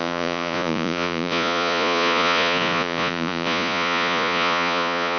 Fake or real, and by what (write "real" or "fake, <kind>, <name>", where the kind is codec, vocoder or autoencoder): fake, vocoder, Vocos